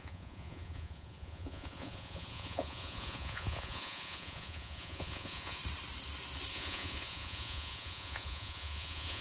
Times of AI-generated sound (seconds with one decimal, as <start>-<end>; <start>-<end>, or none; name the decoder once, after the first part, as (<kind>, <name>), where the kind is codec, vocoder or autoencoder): 0.0-5.6 (vocoder, Vocos); 6.5-9.2